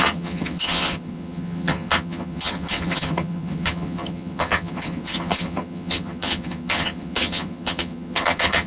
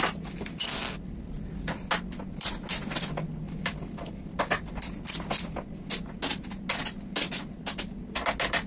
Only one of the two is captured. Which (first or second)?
second